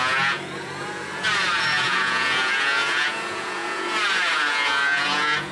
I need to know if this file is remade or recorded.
remade